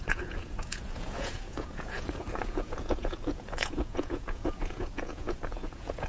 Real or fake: fake